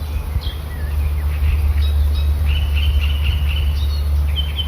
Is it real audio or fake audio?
real